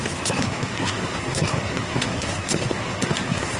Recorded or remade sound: remade